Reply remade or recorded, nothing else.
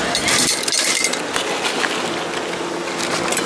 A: recorded